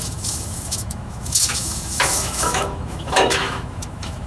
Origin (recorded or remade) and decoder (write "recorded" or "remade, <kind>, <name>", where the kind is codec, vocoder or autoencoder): remade, autoencoder, DAC-VAE